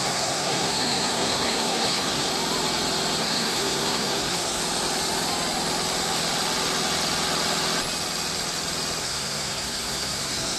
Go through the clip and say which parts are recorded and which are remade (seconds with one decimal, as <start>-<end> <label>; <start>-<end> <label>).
0.0-2.3 remade; 2.3-3.2 recorded; 3.2-4.6 remade; 4.6-9.0 recorded; 9.0-10.6 remade